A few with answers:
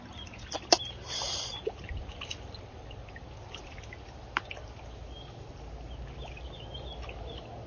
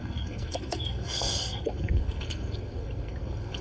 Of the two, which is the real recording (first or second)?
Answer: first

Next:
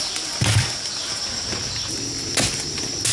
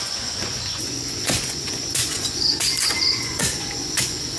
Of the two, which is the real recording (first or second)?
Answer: first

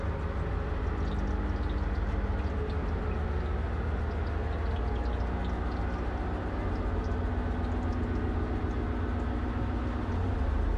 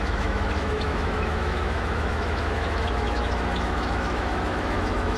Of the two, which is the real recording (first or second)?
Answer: first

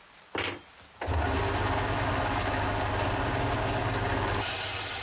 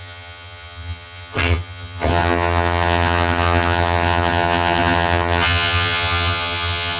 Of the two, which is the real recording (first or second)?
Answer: first